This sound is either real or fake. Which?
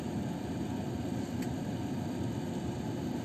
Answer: real